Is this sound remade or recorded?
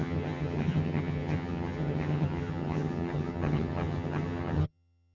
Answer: remade